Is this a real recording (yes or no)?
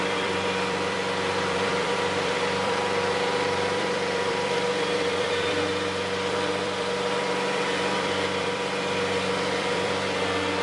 no